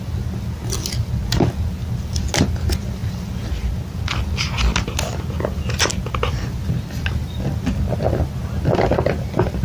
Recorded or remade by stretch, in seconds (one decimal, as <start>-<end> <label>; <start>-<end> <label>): 0.0-3.0 recorded; 3.0-3.5 remade; 3.5-9.6 recorded